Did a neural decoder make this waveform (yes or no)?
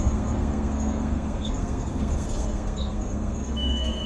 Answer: yes